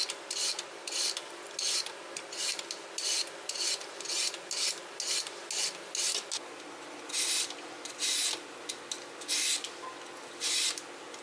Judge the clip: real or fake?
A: real